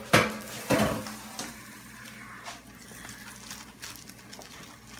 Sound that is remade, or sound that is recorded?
recorded